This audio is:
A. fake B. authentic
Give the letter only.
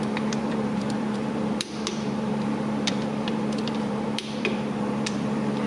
A